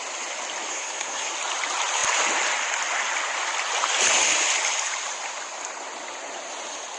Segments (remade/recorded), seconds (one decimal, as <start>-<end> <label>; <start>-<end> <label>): 0.0-0.7 recorded; 0.7-1.3 remade; 1.3-7.0 recorded